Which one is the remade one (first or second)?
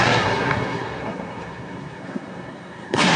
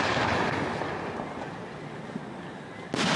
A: first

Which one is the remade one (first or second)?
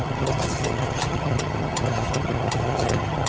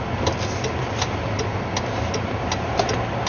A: first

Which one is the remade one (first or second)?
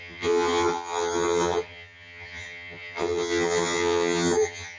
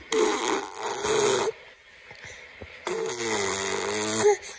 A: first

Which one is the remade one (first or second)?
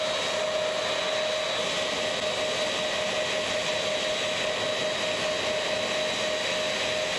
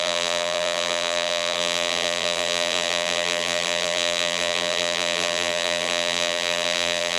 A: second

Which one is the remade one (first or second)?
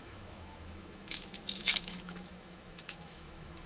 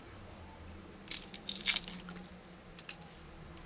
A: first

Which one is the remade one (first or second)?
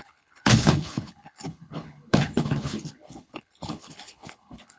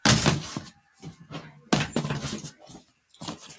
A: first